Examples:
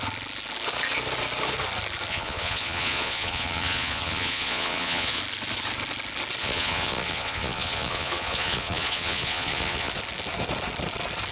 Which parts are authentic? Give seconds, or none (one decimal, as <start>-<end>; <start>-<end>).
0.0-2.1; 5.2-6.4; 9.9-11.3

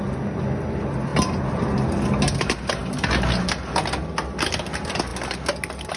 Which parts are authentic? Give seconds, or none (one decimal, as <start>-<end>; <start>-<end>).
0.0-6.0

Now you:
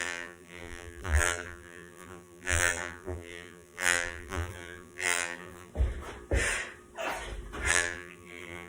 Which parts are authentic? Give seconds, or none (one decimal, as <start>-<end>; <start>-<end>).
5.7-7.7